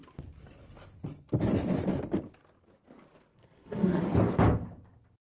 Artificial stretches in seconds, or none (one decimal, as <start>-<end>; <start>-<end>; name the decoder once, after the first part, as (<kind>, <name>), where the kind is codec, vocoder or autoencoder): 3.3-4.0 (codec, SNAC)

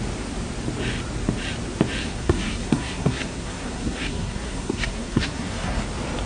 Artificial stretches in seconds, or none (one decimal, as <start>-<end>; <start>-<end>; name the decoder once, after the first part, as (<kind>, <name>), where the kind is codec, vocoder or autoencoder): 2.0-5.8 (codec, SNAC)

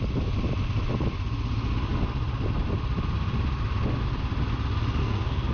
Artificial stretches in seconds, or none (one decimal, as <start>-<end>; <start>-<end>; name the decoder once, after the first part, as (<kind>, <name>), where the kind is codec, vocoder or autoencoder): 5.0-5.5 (codec, SNAC)

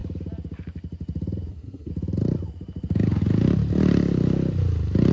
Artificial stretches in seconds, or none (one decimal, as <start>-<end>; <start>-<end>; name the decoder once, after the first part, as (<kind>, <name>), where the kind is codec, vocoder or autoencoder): 1.5-1.9 (codec, SNAC)

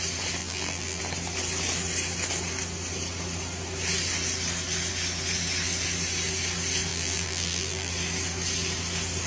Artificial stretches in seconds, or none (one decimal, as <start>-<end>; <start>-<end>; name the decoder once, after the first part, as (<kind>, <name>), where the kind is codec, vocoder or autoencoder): 0.4-1.0 (vocoder, BigVGAN v2); 6.9-7.9

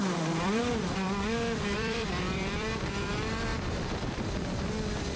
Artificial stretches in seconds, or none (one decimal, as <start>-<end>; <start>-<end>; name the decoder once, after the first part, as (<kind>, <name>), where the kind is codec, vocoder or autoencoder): 0.0-3.1 (vocoder, BigVGAN v2); 3.5-4.7